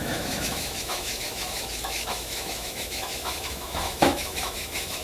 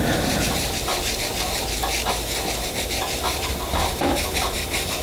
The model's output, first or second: first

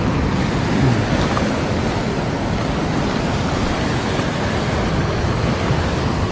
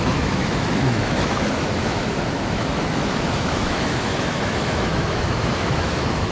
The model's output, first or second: second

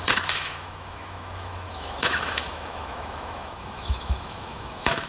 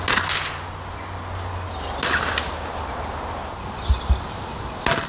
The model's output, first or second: first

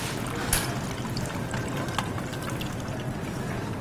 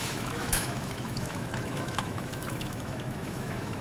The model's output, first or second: second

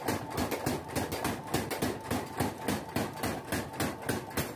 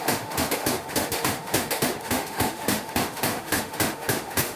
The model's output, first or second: second